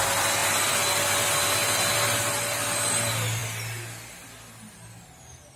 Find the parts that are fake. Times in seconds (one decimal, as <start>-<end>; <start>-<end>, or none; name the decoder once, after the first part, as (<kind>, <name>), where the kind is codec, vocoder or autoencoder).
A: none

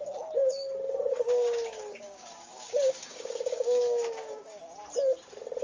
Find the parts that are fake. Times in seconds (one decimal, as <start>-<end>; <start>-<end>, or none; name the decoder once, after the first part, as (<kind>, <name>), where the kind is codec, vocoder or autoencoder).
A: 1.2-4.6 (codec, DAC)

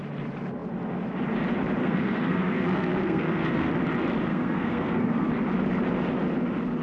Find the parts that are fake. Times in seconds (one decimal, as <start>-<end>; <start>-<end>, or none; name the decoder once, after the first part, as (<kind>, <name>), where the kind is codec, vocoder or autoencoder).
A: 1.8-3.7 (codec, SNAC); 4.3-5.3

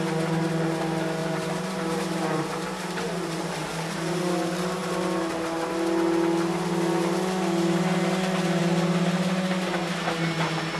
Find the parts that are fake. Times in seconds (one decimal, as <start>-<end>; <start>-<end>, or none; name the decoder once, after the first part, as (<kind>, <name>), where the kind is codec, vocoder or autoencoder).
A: 1.2-4.2 (vocoder, BigVGAN v2)

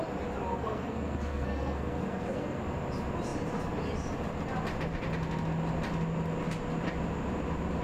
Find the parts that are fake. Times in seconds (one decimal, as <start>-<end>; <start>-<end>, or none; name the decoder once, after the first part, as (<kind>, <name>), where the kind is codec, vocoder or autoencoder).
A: 0.5-2.6 (codec, SNAC)

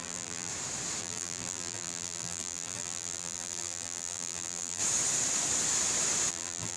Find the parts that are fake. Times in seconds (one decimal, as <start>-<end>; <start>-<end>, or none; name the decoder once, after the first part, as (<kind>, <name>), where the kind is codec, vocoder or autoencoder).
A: 0.0-0.5 (vocoder, BigVGAN v2); 1.0-4.8; 6.3-6.8

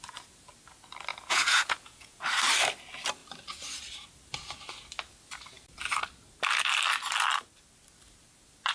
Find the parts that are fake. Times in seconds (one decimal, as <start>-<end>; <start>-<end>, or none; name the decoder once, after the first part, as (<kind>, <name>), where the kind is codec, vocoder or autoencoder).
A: 1.1-2.2 (vocoder, Vocos)

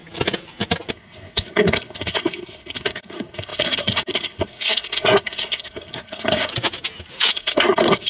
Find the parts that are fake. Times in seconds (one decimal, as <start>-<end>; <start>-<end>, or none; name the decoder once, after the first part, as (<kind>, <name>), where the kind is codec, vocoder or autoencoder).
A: 0.9-6.5 (codec, SNAC); 7.3-8.1